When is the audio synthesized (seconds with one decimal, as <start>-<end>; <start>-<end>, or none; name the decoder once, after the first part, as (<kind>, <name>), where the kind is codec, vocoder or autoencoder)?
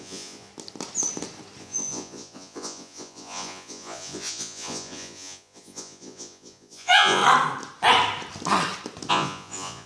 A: 0.0-0.5 (vocoder, Vocos); 1.6-7.2; 9.1-9.9